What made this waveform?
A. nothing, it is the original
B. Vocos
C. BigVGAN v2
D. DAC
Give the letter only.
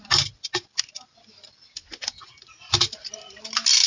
A